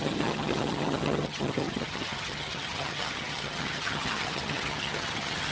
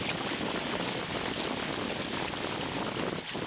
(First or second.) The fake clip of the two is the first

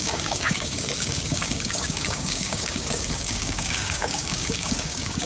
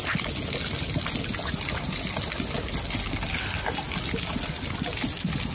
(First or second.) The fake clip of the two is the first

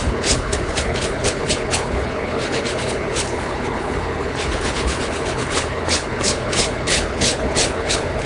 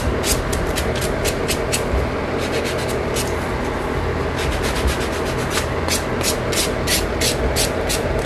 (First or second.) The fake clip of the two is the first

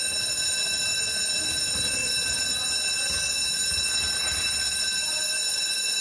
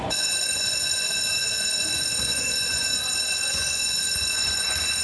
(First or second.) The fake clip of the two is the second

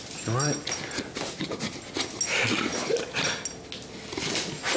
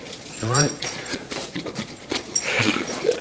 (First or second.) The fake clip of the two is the second